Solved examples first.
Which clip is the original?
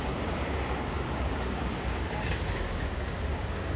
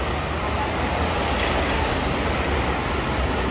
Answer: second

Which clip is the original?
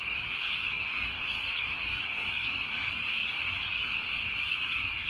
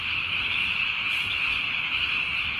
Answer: second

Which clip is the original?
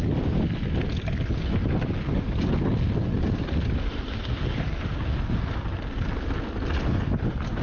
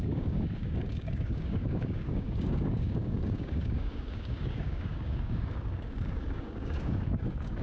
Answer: first